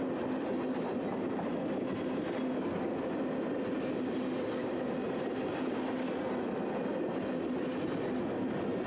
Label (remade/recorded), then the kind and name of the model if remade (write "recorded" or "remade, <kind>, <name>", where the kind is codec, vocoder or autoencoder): recorded